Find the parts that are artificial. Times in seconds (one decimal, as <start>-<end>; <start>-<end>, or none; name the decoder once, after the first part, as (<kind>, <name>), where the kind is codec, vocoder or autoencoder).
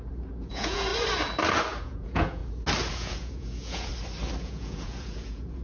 0.0-0.9 (vocoder, Vocos); 1.8-2.4; 2.9-3.9; 4.4-5.6